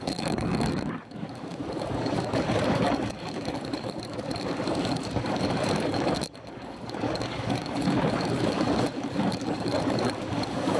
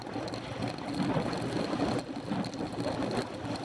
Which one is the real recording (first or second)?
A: second